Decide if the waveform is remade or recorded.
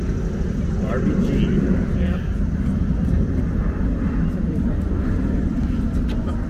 recorded